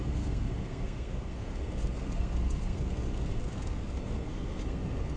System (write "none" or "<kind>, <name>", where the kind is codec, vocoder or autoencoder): codec, SNAC